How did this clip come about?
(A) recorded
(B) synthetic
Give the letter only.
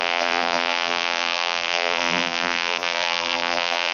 B